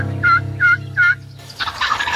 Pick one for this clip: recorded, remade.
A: remade